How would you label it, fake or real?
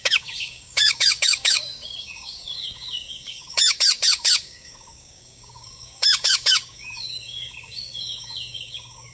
fake